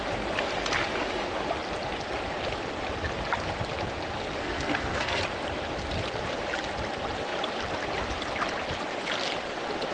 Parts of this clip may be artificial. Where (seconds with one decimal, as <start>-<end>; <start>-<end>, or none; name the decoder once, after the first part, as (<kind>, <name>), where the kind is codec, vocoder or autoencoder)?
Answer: 4.4-5.2 (codec, SNAC)